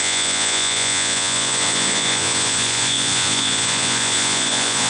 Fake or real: fake